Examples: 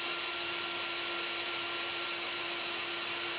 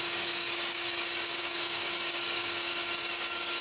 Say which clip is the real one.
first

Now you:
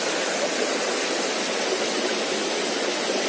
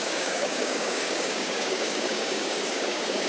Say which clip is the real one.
first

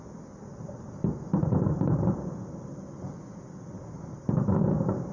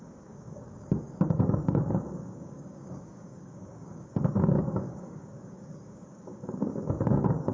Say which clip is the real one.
first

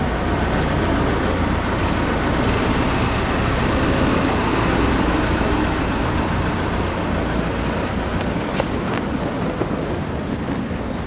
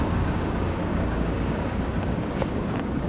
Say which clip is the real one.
first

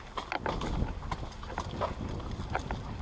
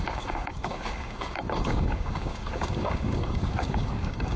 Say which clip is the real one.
first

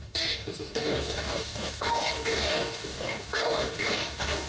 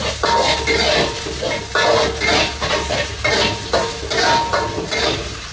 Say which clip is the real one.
second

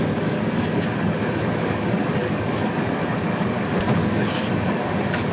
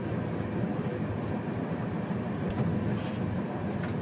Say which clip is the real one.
second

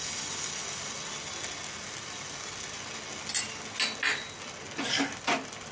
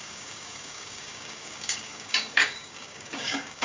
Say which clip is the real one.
first